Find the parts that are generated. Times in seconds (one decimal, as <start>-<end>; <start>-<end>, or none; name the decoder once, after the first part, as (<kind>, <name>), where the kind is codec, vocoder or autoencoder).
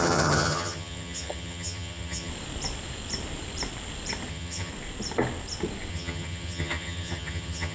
0.0-2.3 (vocoder, HiFi-GAN); 4.3-4.7; 5.9-7.7